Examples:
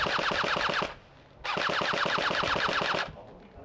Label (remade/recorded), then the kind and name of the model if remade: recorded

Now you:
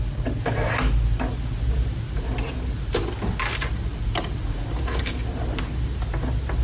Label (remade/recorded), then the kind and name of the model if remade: recorded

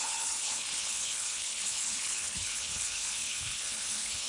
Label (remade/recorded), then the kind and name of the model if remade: remade, codec, HILCodec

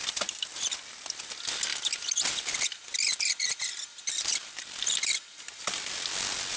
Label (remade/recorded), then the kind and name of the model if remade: recorded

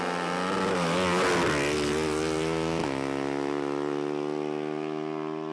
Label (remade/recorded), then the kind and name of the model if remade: recorded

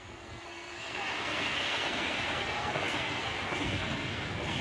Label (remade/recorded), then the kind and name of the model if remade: remade, codec, SNAC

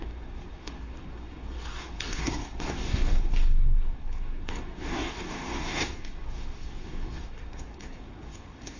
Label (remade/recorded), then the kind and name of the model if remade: remade, codec, SNAC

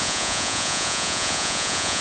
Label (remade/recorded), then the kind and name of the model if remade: remade, vocoder, Vocos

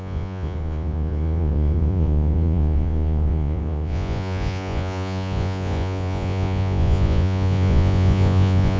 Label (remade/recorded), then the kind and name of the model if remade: remade, vocoder, Vocos